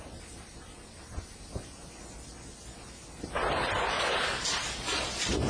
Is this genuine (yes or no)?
yes